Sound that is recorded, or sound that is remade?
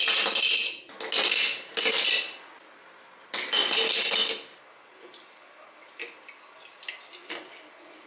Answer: recorded